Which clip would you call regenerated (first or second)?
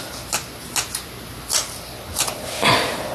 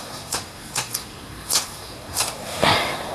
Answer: second